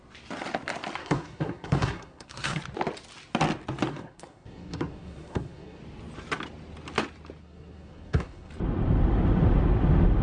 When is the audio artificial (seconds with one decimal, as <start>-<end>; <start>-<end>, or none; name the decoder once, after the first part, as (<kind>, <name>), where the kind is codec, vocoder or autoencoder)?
1.0-2.6 (codec, SNAC); 3.9-5.8; 7.4-8.5

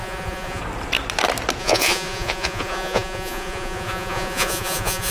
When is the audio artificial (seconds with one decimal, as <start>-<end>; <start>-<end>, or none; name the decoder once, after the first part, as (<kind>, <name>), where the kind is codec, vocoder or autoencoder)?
0.0-0.6 (vocoder, Vocos); 1.6-5.1

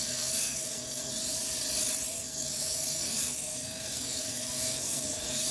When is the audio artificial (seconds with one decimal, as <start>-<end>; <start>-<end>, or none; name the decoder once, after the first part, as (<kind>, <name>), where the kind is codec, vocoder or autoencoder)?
0.0-1.1 (codec, SNAC); 2.1-5.5

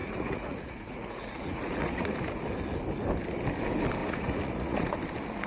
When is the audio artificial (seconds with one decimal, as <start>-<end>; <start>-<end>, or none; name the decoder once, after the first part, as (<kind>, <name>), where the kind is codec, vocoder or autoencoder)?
0.0-2.2 (vocoder, Vocos); 4.0-4.9

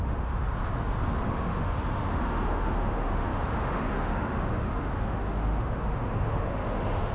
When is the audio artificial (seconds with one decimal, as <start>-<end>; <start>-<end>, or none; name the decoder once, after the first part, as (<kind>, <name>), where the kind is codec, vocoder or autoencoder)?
0.0-0.4 (autoencoder, DAC-VAE); 1.2-7.1